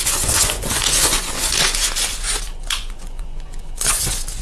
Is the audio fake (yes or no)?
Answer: yes